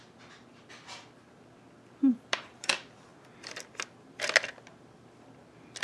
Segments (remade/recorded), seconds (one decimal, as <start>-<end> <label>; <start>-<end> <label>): 0.0-2.1 recorded; 2.1-2.7 remade; 2.7-5.8 recorded